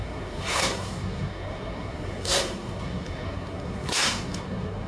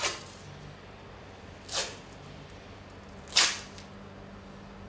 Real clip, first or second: second